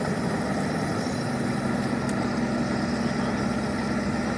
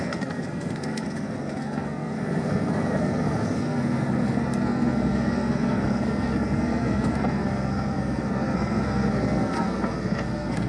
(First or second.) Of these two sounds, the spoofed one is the second